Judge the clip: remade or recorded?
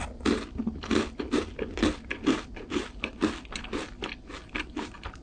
recorded